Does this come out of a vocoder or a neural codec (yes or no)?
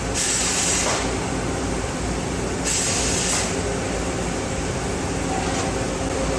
no